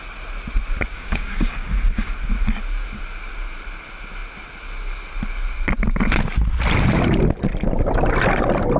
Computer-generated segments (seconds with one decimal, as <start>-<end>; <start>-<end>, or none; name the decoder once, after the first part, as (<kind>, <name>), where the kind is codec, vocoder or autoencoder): 0.9-2.1 (codec, DAC)